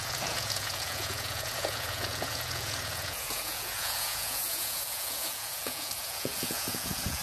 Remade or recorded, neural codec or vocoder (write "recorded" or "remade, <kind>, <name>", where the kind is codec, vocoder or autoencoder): remade, vocoder, Vocos